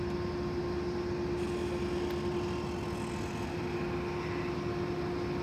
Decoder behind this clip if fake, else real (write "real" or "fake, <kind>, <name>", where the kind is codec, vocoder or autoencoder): real